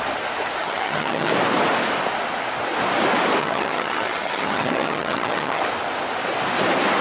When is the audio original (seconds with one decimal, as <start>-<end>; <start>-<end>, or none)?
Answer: 0.0-0.6; 1.3-3.4; 5.6-7.0